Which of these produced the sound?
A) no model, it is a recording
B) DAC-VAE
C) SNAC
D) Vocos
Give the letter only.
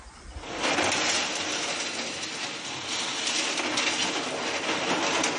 A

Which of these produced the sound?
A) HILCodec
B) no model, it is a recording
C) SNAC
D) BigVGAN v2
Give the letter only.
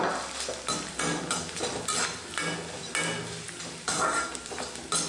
B